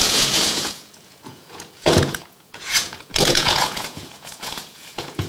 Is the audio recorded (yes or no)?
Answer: no